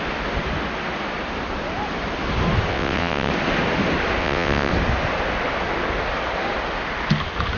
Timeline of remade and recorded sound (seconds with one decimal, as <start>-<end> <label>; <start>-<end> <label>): 0.0-2.7 recorded; 2.7-3.3 remade; 3.3-4.2 recorded; 4.2-4.7 remade; 4.7-7.6 recorded